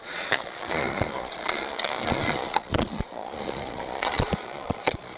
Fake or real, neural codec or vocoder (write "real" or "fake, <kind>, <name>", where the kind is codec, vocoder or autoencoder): fake, vocoder, Vocos